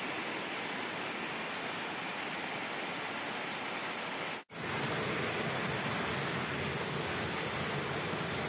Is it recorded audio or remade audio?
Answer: recorded